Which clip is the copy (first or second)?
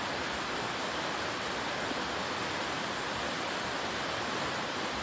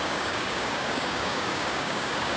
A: second